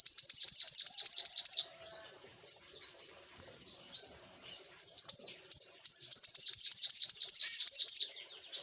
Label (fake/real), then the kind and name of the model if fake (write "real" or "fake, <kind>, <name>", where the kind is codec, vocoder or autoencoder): fake, vocoder, BigVGAN v2